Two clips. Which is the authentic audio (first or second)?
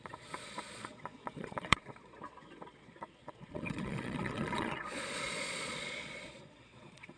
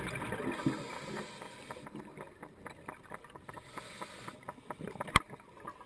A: second